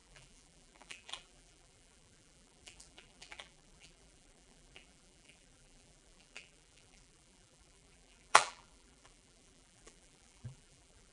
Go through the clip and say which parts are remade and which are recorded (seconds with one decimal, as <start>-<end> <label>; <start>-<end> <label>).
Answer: 0.0-11.1 remade